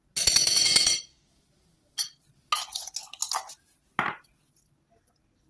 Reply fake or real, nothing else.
real